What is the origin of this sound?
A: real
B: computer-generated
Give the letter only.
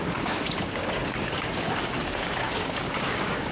B